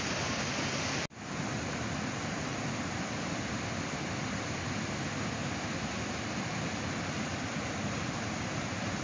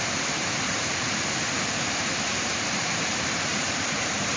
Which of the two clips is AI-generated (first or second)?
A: second